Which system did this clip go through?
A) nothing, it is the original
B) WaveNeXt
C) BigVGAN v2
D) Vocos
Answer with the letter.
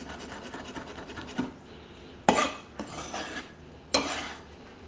A